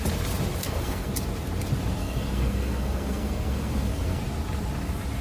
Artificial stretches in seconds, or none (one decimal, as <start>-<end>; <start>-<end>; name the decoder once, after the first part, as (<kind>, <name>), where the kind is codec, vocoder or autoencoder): 0.6-1.1 (codec, SNAC); 2.0-4.2